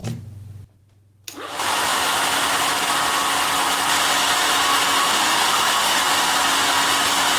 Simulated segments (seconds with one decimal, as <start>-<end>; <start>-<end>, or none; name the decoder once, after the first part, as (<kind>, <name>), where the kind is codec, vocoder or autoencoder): 5.0-6.0 (autoencoder, DAC-VAE)